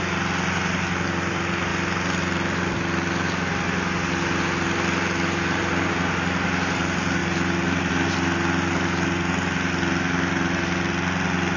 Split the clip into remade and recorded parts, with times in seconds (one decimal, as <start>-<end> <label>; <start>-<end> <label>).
0.0-11.6 recorded